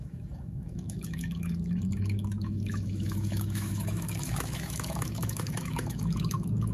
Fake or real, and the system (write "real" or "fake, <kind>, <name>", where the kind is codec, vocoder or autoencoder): fake, autoencoder, DAC-VAE